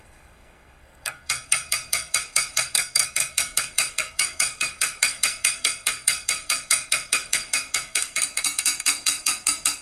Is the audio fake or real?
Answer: fake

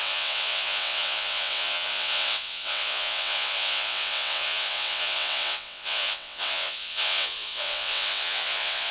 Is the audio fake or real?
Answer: fake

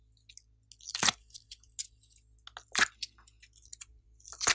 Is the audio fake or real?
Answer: real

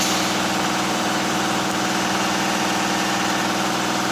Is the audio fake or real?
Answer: real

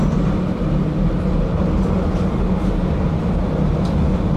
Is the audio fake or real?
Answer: real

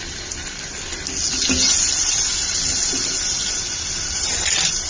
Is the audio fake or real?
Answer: real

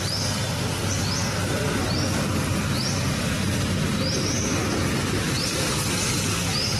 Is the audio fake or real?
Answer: real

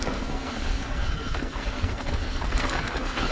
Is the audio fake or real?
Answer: fake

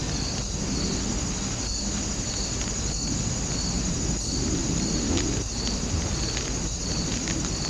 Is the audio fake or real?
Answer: real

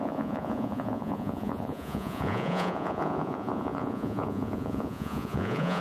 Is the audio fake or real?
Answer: fake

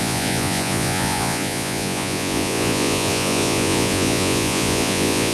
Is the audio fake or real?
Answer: fake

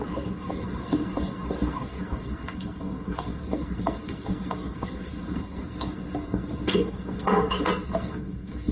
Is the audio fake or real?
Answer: fake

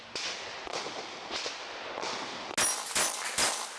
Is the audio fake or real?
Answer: real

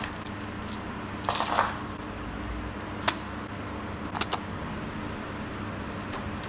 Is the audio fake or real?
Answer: real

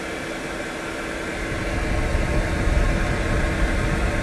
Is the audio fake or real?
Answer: real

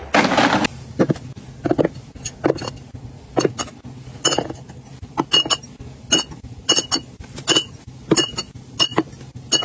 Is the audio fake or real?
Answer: real